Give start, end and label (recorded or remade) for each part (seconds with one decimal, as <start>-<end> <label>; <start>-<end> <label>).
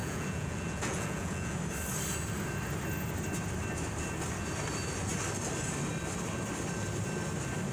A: 0.0-1.6 remade; 1.6-7.7 recorded